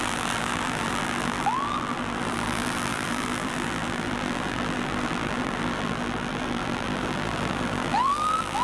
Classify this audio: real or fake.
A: fake